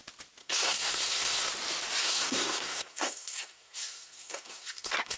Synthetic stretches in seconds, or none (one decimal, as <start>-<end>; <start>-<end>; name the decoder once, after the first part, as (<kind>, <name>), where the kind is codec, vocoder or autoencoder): 0.4-1.5 (codec, SNAC); 2.0-5.2